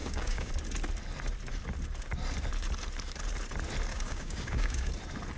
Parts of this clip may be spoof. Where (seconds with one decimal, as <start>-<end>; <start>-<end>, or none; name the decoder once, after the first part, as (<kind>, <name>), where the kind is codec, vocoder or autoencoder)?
0.0-0.5 (codec, DAC); 3.9-4.9